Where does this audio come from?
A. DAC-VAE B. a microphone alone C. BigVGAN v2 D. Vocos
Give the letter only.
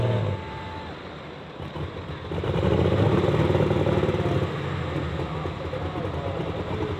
B